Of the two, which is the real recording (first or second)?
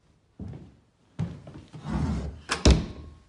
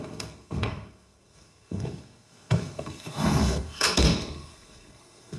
first